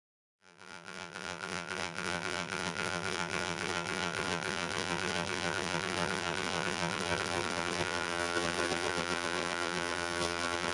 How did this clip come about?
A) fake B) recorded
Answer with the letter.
A